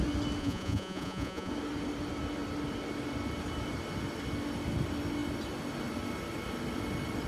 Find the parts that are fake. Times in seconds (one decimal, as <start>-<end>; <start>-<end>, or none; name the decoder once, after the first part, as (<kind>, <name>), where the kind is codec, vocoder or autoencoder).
0.4-1.5 (vocoder, Vocos)